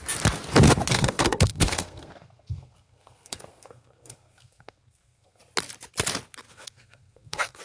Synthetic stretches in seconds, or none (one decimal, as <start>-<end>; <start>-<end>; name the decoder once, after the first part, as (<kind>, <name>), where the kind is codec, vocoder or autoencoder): 0.9-5.4 (codec, SNAC); 6.5-7.6